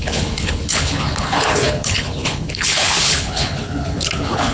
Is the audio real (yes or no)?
no